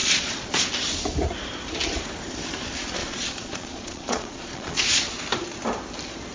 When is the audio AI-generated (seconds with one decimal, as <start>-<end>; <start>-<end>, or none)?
0.0-0.7; 3.0-5.2